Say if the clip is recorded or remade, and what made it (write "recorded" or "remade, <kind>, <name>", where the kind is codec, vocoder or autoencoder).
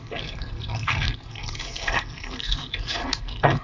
remade, codec, SNAC